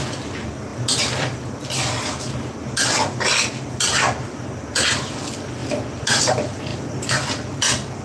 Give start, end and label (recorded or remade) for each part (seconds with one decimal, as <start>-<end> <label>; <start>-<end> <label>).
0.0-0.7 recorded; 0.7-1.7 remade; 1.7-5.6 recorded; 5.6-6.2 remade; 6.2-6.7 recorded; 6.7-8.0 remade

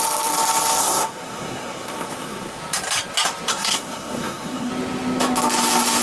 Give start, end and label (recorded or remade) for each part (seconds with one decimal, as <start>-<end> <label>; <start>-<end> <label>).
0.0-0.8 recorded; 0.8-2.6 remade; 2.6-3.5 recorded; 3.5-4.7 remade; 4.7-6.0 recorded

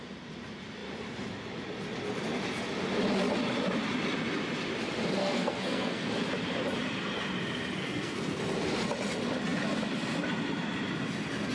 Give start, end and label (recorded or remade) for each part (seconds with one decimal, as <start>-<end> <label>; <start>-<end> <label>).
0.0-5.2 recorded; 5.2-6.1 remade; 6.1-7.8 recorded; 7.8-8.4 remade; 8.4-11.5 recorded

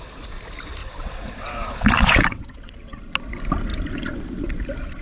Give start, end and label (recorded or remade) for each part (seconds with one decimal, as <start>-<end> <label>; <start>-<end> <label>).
0.0-0.8 recorded; 0.8-3.0 remade; 3.0-5.0 recorded

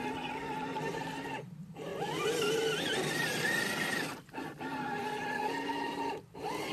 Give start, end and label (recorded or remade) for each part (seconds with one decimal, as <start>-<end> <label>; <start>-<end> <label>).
0.0-0.7 recorded; 0.7-1.3 remade; 1.3-6.7 recorded

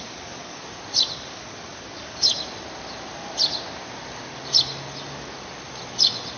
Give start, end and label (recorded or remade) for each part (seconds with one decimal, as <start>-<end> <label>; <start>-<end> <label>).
0.0-0.6 remade; 0.6-1.1 recorded; 1.1-2.3 remade; 2.3-6.4 recorded

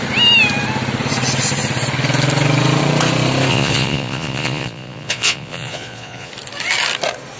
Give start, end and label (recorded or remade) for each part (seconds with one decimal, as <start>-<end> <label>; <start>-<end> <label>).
0.0-3.5 recorded; 3.5-6.3 remade; 6.3-7.4 recorded